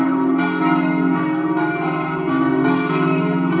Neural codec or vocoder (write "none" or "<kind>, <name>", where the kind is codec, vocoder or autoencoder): codec, DAC